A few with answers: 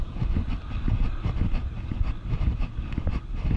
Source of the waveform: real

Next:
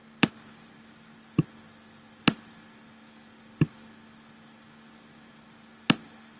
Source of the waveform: real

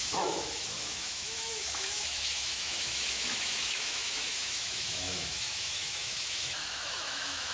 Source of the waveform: fake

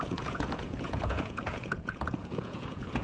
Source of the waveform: fake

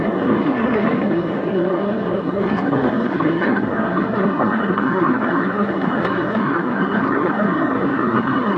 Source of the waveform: fake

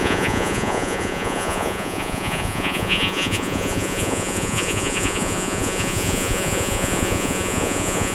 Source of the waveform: fake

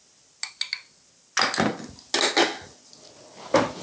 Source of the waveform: real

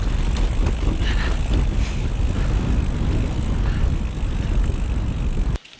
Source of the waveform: real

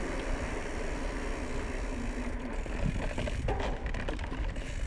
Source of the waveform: real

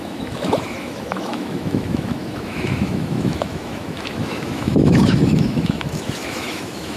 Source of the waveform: fake